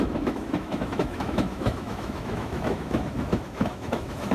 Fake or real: fake